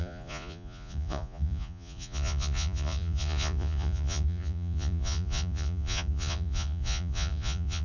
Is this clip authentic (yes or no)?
no